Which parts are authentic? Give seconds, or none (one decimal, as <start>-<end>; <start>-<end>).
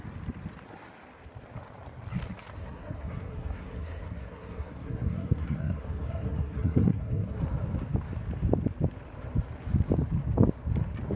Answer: 0.0-2.6; 7.4-11.2